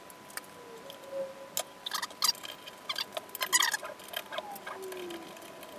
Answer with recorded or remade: recorded